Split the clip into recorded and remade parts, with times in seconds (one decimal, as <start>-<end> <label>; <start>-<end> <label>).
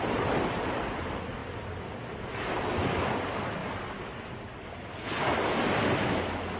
0.0-6.6 recorded